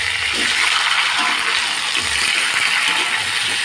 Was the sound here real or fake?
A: real